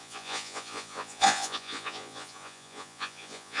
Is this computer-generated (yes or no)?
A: yes